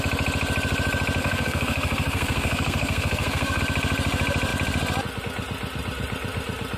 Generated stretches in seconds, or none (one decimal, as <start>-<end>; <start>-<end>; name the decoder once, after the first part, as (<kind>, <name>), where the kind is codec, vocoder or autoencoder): 1.2-3.6 (codec, SNAC)